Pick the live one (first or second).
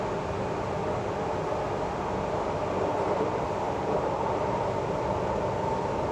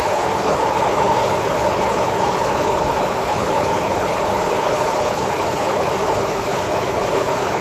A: first